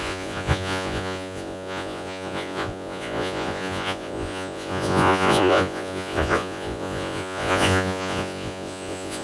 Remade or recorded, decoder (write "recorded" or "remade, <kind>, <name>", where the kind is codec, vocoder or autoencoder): remade, vocoder, Vocos